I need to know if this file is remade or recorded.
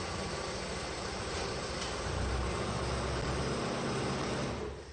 recorded